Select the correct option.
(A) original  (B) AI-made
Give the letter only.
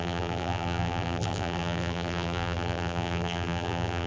B